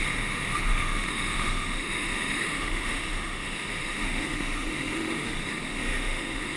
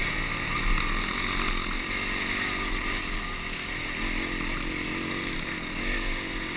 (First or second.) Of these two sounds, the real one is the second